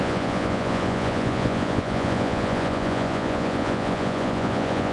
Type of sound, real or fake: fake